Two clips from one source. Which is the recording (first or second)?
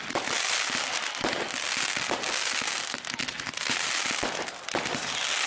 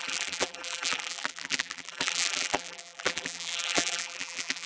first